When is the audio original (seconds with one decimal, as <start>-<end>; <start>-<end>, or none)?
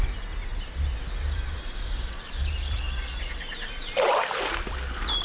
0.0-5.2